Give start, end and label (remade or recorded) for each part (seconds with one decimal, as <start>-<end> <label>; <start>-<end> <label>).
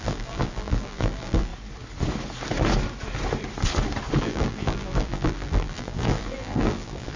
0.0-1.5 remade; 1.5-4.2 recorded; 4.2-7.2 remade